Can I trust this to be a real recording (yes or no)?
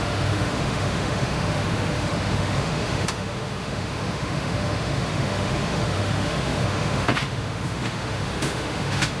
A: no